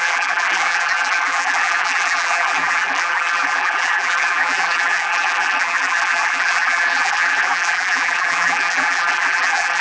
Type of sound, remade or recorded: remade